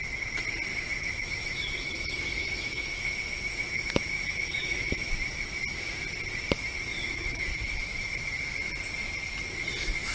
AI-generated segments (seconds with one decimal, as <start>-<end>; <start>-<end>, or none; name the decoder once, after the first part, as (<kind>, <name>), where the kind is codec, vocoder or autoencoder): 0.7-5.1 (autoencoder, DAC-VAE); 6.9-8.2